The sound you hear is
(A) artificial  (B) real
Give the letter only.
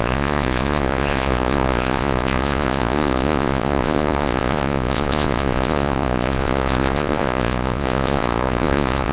A